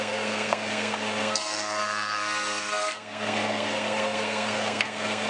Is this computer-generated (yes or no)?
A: yes